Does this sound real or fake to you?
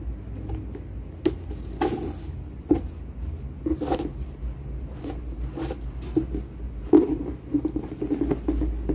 real